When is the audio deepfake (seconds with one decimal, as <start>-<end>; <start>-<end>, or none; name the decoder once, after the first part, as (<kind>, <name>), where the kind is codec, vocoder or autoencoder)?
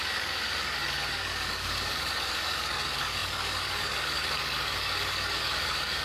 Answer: 0.0-6.0 (codec, DAC)